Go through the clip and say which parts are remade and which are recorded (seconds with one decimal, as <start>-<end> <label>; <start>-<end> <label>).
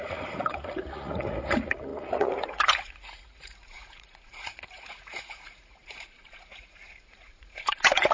0.0-8.1 remade